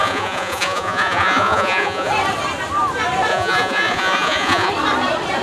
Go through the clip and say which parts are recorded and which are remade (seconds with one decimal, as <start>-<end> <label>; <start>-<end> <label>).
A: 0.0-2.1 remade; 2.1-3.3 recorded; 3.3-4.7 remade; 4.7-5.4 recorded